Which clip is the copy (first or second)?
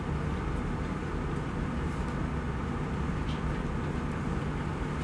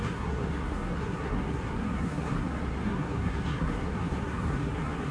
second